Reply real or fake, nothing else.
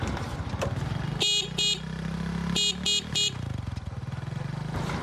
real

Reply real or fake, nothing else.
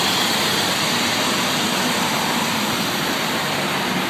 real